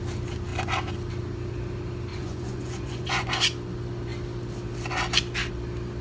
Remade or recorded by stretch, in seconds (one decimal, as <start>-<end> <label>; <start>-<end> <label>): 0.0-2.1 recorded; 2.1-3.3 remade; 3.3-6.0 recorded